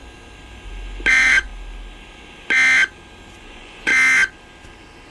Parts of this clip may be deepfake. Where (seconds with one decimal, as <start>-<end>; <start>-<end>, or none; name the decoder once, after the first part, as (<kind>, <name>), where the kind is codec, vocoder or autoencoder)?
1.1-1.5 (vocoder, Vocos); 3.4-3.9